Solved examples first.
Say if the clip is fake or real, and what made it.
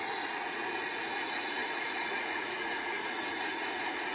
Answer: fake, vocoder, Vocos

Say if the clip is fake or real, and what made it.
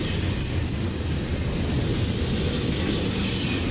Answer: real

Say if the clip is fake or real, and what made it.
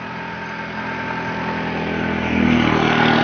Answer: real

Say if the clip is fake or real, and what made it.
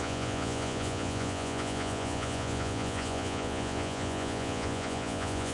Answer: fake, vocoder, Vocos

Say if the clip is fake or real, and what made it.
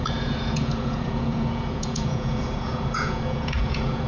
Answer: fake, vocoder, Vocos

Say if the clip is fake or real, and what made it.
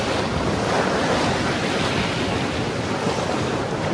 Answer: real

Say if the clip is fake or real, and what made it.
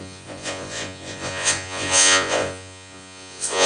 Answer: fake, vocoder, Vocos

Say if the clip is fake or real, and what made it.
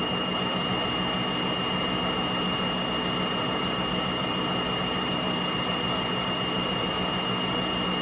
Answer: real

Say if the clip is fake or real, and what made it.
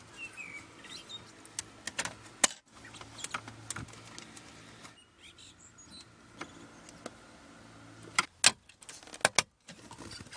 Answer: real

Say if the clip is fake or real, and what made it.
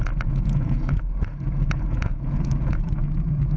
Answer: fake, vocoder, Vocos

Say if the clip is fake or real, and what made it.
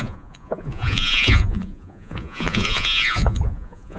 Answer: fake, vocoder, Vocos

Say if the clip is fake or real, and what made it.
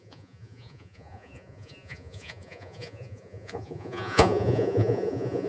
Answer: fake, vocoder, Vocos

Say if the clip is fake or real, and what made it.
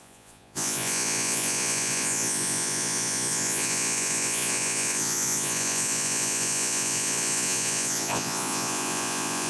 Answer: fake, vocoder, Vocos